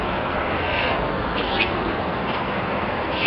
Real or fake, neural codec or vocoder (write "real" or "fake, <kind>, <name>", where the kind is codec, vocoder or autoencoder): fake, codec, SNAC